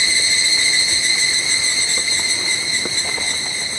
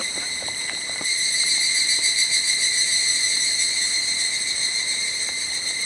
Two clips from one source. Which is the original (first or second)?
first